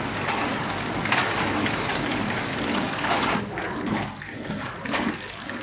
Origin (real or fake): fake